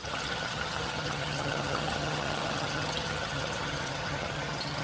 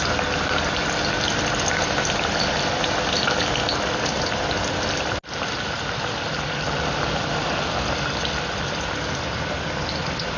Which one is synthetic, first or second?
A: first